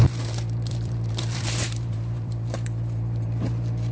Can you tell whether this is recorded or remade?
remade